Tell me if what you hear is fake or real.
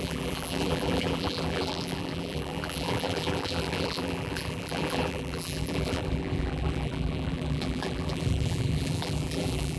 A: fake